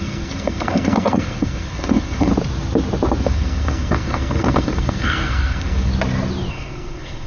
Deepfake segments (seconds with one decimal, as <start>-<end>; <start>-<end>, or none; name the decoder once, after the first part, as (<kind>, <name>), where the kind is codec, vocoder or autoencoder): 0.0-2.3 (codec, SNAC); 3.2-5.9; 6.5-7.3